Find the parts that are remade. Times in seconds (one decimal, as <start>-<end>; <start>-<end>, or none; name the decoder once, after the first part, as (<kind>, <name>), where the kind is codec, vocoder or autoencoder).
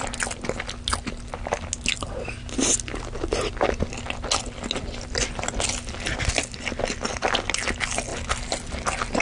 none